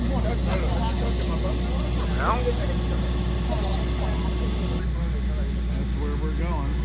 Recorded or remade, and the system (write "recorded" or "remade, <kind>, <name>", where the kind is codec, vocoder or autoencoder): recorded